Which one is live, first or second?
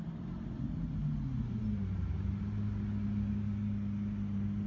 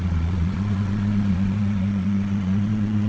first